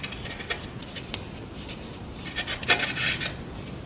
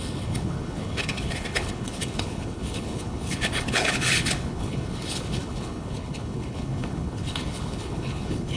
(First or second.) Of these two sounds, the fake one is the second